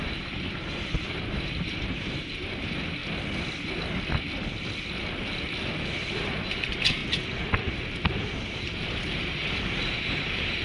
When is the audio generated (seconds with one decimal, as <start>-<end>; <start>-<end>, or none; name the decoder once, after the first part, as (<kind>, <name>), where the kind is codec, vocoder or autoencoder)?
0.0-3.0 (vocoder, BigVGAN v2); 5.8-7.0; 7.7-10.6